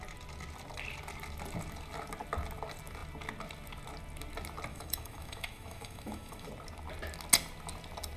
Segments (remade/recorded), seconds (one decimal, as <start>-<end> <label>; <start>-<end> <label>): 0.0-4.7 recorded; 4.7-6.5 remade; 6.5-8.2 recorded